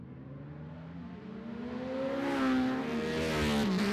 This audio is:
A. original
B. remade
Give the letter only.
A